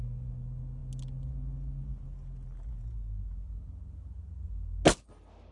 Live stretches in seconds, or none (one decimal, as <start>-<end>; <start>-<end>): 0.0-5.5